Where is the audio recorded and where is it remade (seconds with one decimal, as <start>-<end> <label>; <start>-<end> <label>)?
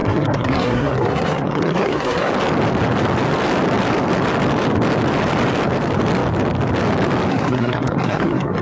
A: 0.0-2.3 remade; 2.3-7.3 recorded; 7.3-8.6 remade